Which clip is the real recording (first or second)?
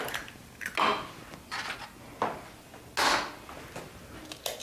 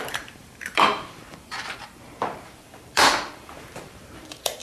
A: first